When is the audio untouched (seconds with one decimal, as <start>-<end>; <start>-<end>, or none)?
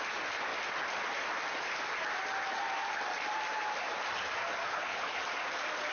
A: 0.0-4.6; 5.2-5.9